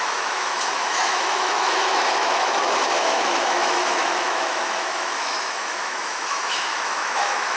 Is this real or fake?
fake